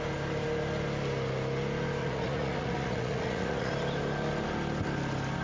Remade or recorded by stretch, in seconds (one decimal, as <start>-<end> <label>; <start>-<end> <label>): 0.0-2.0 recorded; 2.0-3.7 remade; 3.7-5.4 recorded